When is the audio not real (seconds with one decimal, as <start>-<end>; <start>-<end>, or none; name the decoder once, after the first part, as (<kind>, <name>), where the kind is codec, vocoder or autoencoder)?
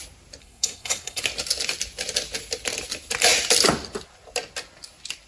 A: 0.4-1.2 (codec, SNAC)